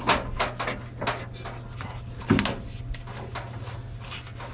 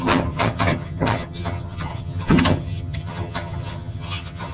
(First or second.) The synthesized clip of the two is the second